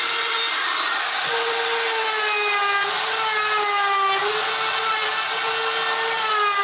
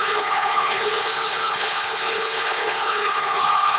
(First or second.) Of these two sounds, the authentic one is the first